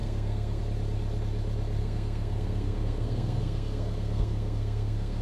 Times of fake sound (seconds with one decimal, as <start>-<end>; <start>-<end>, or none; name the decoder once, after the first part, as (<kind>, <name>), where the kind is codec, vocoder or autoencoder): 0.0-0.6 (codec, SNAC); 1.8-5.2